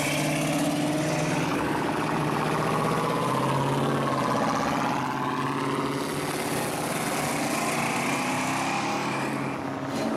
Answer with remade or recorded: recorded